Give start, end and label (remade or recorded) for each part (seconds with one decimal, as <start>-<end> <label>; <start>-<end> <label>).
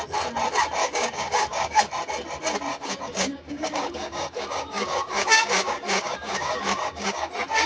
0.0-0.8 recorded; 0.8-1.8 remade; 1.8-2.7 recorded; 2.7-7.3 remade; 7.3-7.7 recorded